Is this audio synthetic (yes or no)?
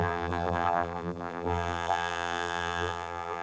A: yes